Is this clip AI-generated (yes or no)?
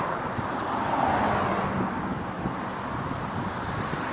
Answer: no